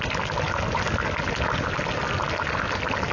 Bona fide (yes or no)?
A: yes